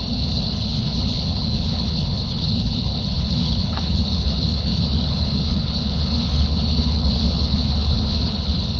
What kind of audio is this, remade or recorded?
remade